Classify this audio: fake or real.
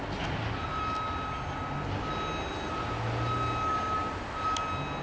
real